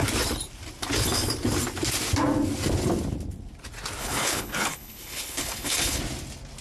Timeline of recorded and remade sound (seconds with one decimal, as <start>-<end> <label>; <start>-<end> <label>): 0.0-4.0 recorded; 4.0-6.0 remade; 6.0-6.6 recorded